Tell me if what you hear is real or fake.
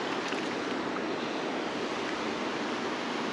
real